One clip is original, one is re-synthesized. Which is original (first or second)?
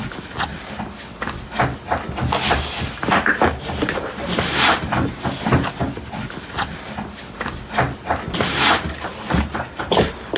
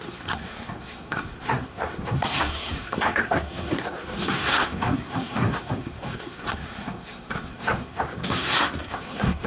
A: first